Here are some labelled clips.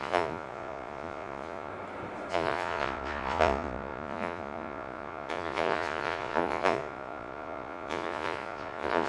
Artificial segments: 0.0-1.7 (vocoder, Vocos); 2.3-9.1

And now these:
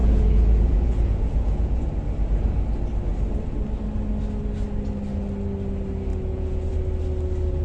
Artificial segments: 0.0-1.9 (vocoder, Vocos); 6.1-6.7

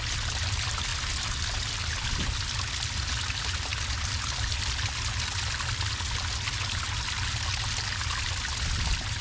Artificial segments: none

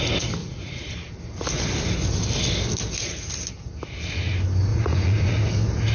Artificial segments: 0.4-0.9 (vocoder, Vocos); 4.7-5.3

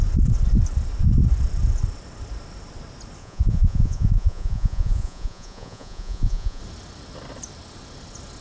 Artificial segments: 3.2-6.6 (vocoder, Vocos)

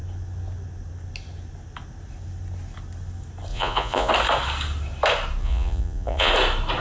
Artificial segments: 3.5-4.1 (vocoder, Vocos); 5.4-6.3

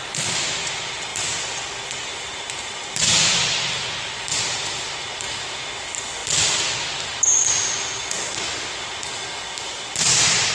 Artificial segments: none

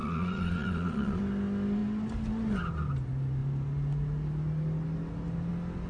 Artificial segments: 0.0-1.2 (vocoder, Vocos)